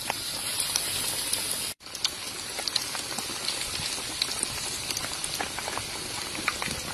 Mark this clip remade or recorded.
recorded